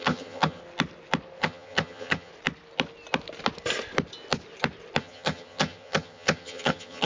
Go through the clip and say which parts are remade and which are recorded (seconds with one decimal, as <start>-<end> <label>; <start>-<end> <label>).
0.0-0.6 remade; 0.6-1.4 recorded; 1.4-2.3 remade; 2.3-5.0 recorded; 5.0-7.1 remade